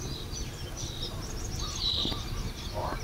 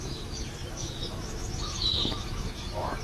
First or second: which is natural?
first